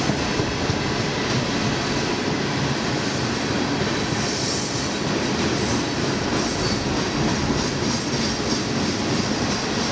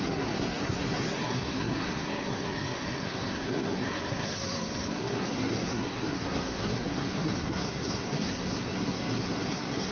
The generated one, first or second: second